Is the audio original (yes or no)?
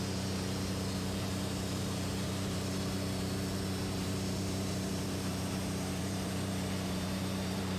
no